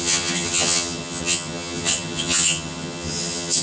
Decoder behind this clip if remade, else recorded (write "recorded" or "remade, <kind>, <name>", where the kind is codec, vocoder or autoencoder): remade, vocoder, HiFi-GAN